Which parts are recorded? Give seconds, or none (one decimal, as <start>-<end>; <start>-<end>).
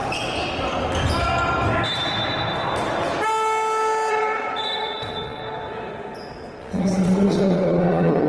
0.0-4.1; 5.4-6.6